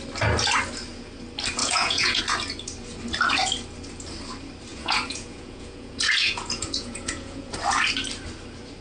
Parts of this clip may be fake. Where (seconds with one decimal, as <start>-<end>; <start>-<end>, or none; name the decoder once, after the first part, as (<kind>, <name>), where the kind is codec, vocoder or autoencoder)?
1.6-2.2 (vocoder, Vocos); 4.7-7.5